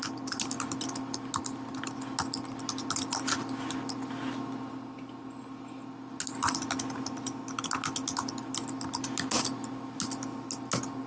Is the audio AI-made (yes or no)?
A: no